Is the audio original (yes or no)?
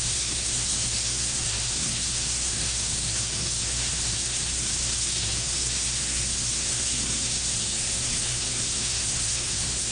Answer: no